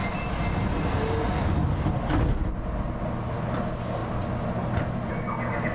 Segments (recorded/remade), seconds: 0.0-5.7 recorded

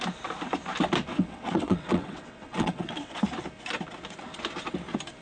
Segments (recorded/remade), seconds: 0.0-1.1 recorded; 1.1-3.2 remade; 3.2-5.2 recorded

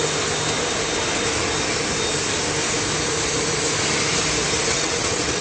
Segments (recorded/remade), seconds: 0.0-4.7 recorded; 4.7-5.4 remade

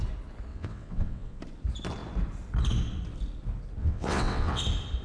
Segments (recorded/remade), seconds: 0.0-0.5 recorded; 0.5-1.4 remade; 1.4-3.8 recorded; 3.8-4.6 remade; 4.6-5.0 recorded

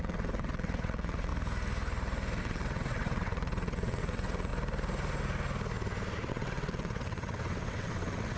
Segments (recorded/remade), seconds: 0.0-1.3 remade; 1.3-2.4 recorded; 2.4-4.5 remade; 4.5-6.3 recorded; 6.3-8.4 remade

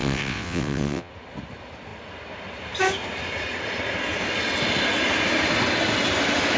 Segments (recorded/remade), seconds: 0.0-1.1 remade; 1.1-6.6 recorded

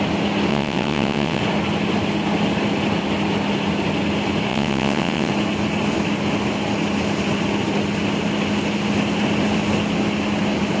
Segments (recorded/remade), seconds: 0.0-0.5 recorded; 0.5-1.4 remade; 1.4-4.5 recorded; 4.5-5.3 remade; 5.3-10.8 recorded